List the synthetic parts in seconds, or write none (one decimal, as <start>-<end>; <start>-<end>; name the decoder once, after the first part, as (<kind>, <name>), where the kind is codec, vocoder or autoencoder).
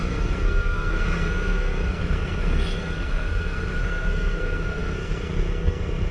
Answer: 0.0-6.1 (codec, SNAC)